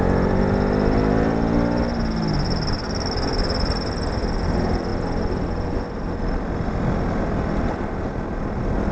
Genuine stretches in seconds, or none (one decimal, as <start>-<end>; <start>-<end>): 0.0-8.9